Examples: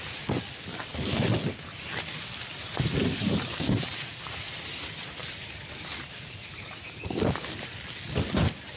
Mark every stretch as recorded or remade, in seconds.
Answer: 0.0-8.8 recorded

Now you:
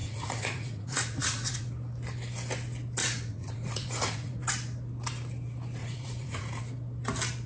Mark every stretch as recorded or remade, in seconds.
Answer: 0.0-1.7 remade; 1.7-3.0 recorded; 3.0-4.5 remade; 4.5-5.8 recorded; 5.8-6.6 remade; 6.6-7.5 recorded

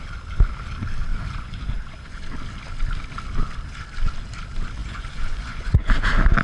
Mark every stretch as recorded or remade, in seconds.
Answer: 0.0-1.1 recorded; 1.1-1.8 remade; 1.8-4.8 recorded; 4.8-5.8 remade; 5.8-6.4 recorded

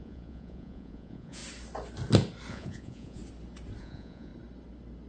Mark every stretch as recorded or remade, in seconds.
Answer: 0.0-1.4 remade; 1.4-2.5 recorded; 2.5-3.2 remade; 3.2-3.8 recorded; 3.8-4.3 remade; 4.3-5.1 recorded

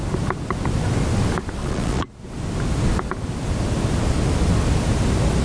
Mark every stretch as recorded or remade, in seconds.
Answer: 0.0-1.6 recorded; 1.6-2.1 remade; 2.1-5.4 recorded